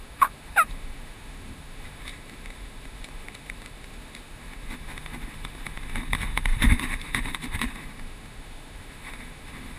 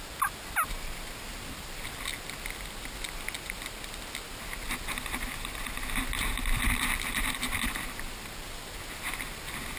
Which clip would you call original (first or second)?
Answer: second